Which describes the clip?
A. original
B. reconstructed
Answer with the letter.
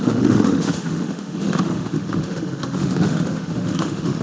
B